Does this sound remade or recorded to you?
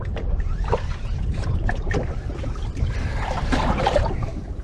remade